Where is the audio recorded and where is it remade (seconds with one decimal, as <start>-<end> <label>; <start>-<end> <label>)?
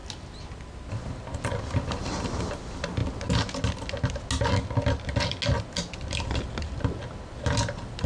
0.0-8.1 recorded